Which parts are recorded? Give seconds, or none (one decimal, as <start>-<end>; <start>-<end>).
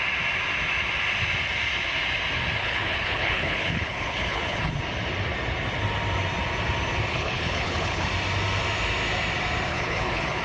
0.0-2.6; 4.8-7.1; 8.1-9.7